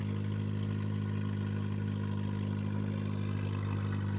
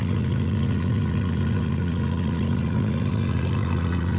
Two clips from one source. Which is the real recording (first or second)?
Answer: first